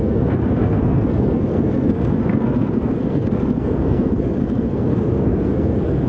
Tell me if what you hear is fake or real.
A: fake